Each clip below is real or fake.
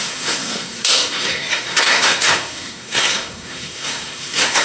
fake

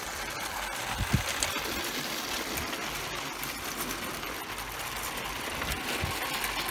real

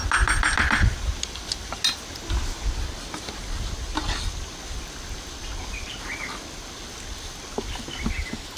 real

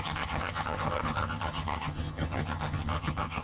fake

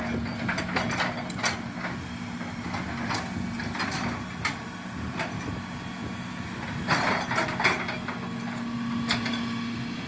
real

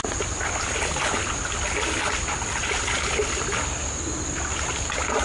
real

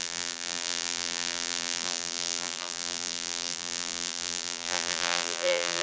fake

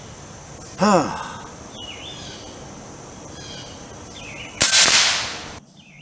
real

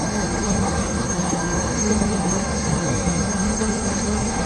fake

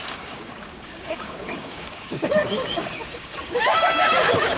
fake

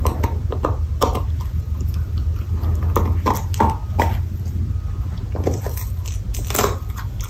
real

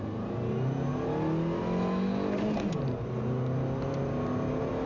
real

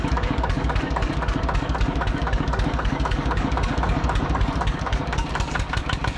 fake